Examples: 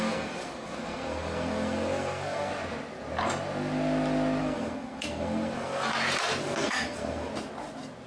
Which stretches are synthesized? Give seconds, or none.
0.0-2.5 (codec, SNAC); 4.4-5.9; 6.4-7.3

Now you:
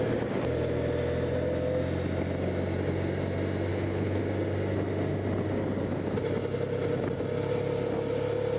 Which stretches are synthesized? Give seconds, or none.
3.7-4.2 (codec, HILCodec)

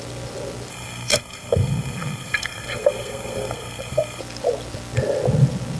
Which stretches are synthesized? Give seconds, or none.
0.7-4.2 (codec, SNAC)

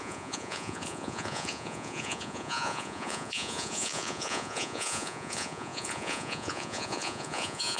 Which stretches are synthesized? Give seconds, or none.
0.0-7.8 (vocoder, Vocos)

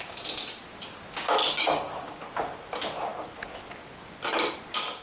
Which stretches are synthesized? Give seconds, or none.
1.4-2.2 (codec, DAC)